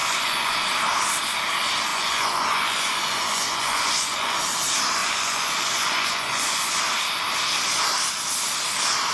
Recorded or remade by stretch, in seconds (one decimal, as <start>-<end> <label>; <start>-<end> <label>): 0.0-0.5 remade; 0.5-1.9 recorded; 1.9-4.4 remade; 4.4-5.0 recorded; 5.0-6.8 remade; 6.8-9.1 recorded